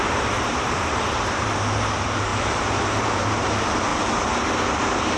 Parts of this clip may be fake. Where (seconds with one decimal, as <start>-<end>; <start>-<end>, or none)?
0.0-3.9; 4.8-5.2